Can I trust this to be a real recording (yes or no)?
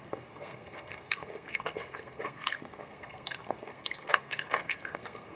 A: no